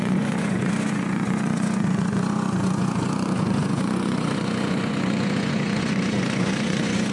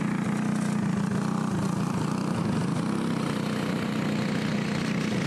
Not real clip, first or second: first